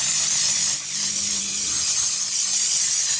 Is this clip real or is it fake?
fake